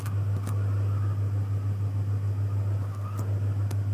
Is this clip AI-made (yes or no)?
no